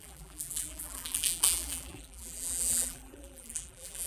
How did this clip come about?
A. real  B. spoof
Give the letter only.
B